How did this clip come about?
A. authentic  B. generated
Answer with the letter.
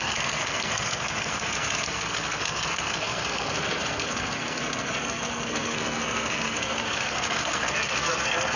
B